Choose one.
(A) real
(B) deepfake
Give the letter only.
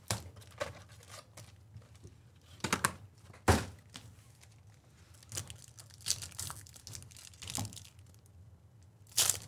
A